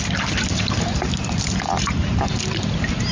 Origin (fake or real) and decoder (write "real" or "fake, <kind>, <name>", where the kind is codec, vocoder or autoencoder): real